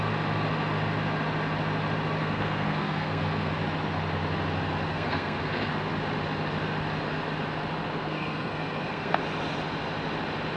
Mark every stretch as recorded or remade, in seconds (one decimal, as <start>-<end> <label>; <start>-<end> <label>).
0.0-2.2 recorded; 2.2-3.5 remade; 3.5-4.9 recorded; 4.9-5.7 remade; 5.7-8.0 recorded; 8.0-9.2 remade; 9.2-10.6 recorded